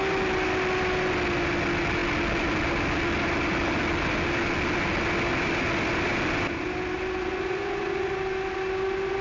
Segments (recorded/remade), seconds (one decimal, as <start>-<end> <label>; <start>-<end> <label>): 0.0-9.2 recorded